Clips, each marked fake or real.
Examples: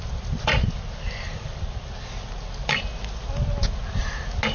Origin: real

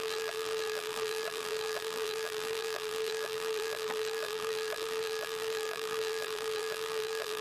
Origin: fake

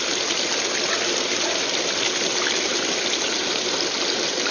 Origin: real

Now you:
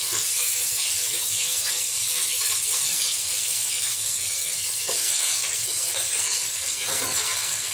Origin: fake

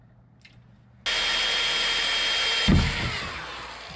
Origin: real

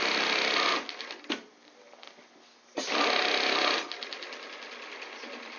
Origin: real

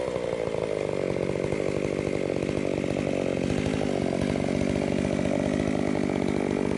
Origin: real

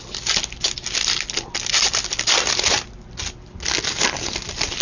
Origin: real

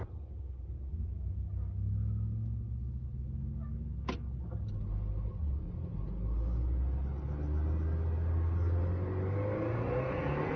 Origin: real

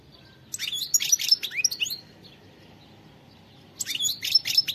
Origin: real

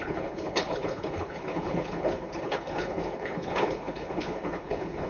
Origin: fake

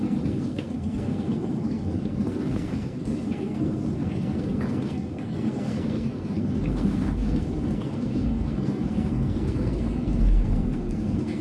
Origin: fake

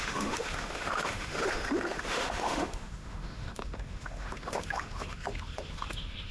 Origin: fake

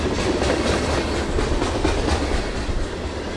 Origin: real